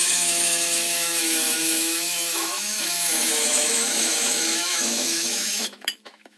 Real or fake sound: fake